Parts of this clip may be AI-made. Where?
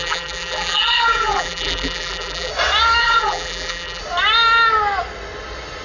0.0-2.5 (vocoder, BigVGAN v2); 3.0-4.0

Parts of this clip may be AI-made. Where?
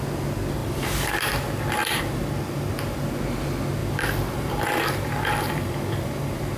0.6-2.0 (vocoder, BigVGAN v2); 3.8-6.6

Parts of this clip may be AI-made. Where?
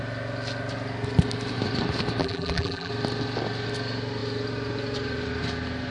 2.2-2.9 (vocoder, BigVGAN v2)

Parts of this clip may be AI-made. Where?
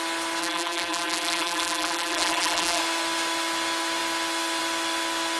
0.4-2.8 (vocoder, BigVGAN v2)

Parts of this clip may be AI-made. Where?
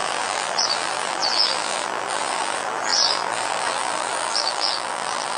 0.0-5.4 (vocoder, BigVGAN v2)